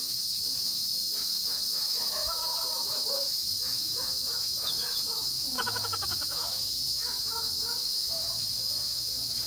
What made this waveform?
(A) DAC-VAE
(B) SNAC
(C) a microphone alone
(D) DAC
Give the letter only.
A